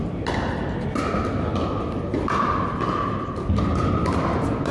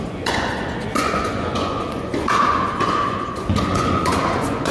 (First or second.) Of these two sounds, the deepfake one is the second